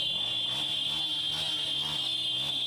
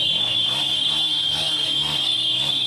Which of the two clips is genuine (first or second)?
first